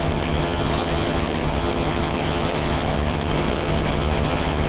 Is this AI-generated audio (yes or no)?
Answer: yes